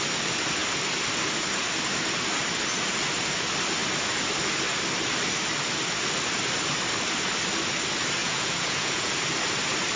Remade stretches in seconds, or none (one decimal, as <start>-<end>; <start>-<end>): 8.2-9.1